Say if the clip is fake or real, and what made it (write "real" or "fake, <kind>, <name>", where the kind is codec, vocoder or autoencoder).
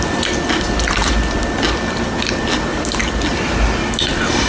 real